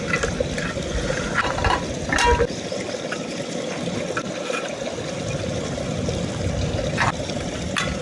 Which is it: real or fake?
real